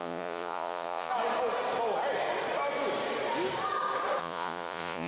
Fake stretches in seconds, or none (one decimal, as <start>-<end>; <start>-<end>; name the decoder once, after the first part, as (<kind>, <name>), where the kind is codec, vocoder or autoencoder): 0.0-1.1 (vocoder, Vocos); 4.2-5.1